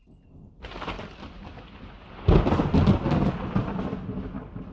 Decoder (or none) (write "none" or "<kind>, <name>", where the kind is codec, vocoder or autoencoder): none